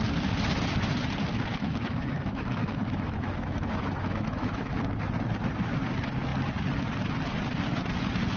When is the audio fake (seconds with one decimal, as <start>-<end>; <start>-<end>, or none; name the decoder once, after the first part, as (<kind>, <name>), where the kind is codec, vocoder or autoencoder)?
1.5-4.8 (autoencoder, DAC-VAE)